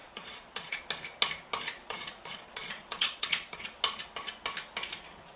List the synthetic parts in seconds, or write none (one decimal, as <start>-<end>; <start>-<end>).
0.0-0.8; 1.8-3.6

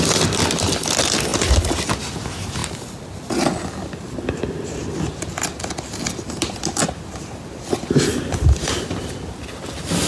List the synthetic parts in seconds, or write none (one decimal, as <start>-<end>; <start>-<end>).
none